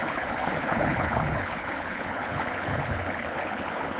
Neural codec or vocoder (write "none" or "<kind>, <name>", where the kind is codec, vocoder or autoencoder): codec, HILCodec